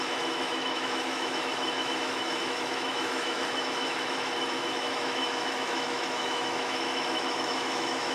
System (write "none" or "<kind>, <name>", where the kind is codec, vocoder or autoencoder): autoencoder, DAC-VAE